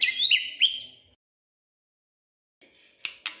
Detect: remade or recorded recorded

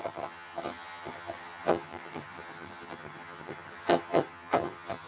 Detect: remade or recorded remade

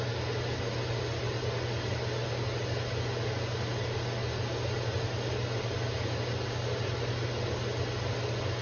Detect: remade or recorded recorded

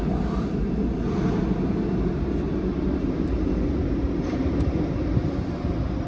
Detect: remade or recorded recorded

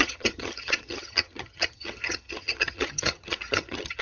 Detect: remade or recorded remade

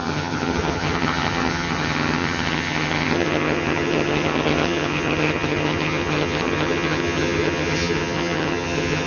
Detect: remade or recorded remade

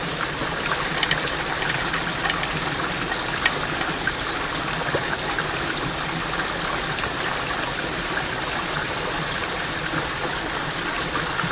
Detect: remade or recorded recorded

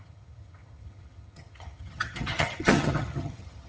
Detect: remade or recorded remade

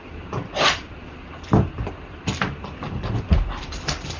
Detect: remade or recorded recorded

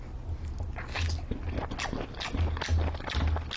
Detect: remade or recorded recorded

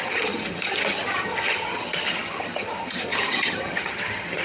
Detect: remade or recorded remade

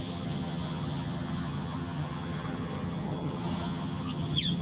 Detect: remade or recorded remade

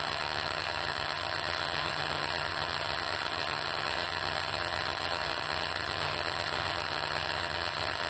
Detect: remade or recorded remade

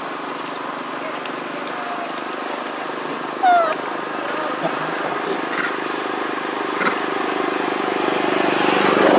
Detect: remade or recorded recorded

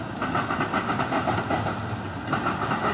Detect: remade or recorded recorded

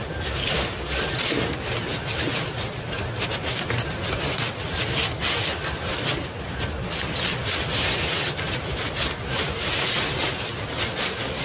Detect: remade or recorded recorded